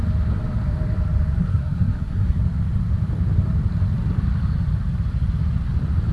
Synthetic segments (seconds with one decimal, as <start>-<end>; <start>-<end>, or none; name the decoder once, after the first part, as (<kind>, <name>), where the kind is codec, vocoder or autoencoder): 1.4-2.4 (codec, SNAC)